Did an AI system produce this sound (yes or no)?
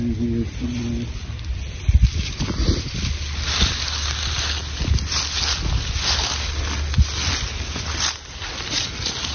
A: no